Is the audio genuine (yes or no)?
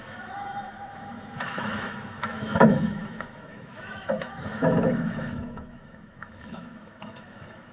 no